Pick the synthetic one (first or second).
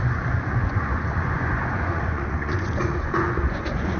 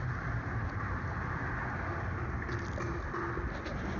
first